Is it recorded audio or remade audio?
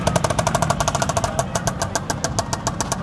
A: recorded